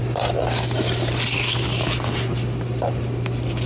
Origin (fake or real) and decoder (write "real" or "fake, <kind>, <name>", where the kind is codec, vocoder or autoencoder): real